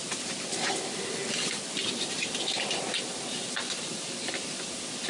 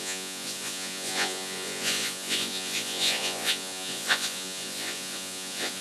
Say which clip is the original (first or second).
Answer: first